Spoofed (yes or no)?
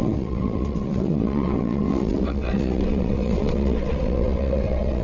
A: yes